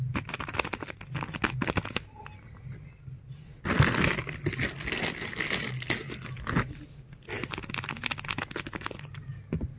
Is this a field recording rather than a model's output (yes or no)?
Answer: yes